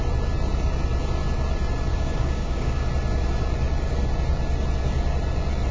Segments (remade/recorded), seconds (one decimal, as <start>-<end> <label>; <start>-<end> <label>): 0.0-1.9 recorded; 1.9-2.9 remade; 2.9-5.7 recorded